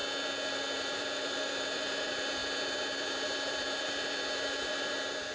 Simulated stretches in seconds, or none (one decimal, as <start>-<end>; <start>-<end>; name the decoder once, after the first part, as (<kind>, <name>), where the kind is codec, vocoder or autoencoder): 0.5-5.3 (vocoder, BigVGAN v2)